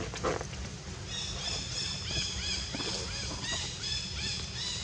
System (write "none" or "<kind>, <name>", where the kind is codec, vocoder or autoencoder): none